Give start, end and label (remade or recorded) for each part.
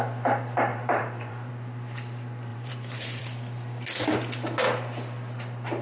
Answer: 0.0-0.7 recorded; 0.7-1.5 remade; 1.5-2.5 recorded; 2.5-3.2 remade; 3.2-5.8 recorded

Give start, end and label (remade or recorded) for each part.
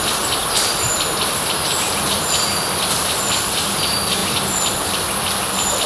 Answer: 0.0-0.4 recorded; 0.4-3.0 remade; 3.0-4.2 recorded; 4.2-5.9 remade